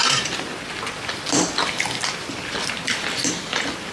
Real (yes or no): no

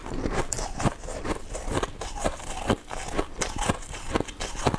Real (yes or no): yes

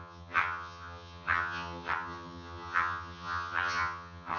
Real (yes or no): no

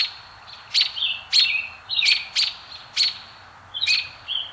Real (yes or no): yes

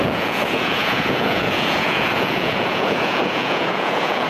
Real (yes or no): no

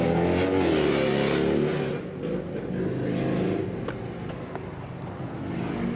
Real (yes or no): yes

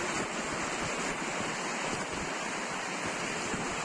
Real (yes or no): yes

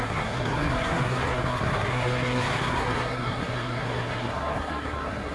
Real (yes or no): no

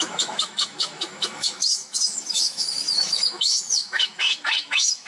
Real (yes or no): no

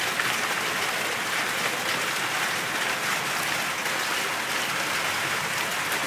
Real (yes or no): yes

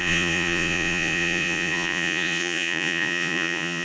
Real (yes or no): no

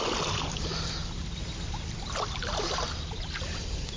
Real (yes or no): yes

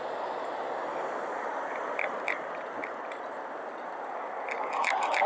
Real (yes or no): yes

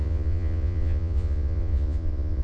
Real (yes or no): no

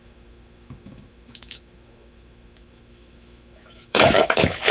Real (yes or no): no